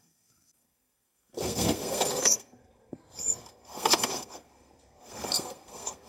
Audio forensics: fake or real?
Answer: fake